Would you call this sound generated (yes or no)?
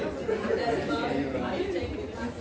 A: yes